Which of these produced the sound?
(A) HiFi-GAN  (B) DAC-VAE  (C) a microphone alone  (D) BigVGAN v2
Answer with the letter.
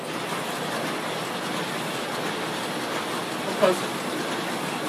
C